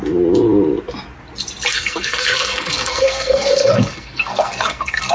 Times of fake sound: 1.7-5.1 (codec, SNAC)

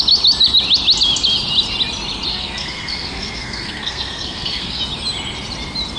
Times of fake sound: 2.3-4.8 (codec, SNAC)

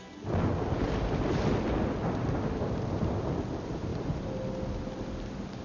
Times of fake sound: none

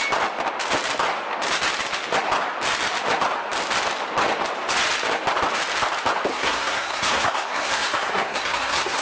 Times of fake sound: 6.3-9.0 (codec, SNAC)

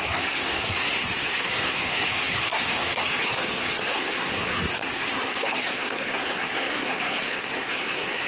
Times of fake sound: 0.0-8.3 (codec, SNAC)

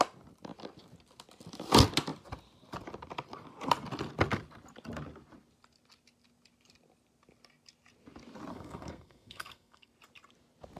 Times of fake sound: 8.5-9.9 (codec, SNAC)

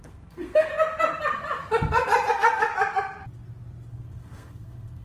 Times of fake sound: 0.0-0.7 (codec, SNAC); 2.3-2.7; 3.9-5.0